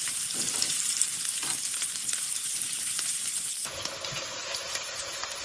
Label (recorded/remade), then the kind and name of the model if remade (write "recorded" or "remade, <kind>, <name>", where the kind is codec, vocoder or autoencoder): remade, vocoder, BigVGAN v2